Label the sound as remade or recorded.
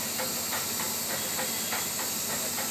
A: recorded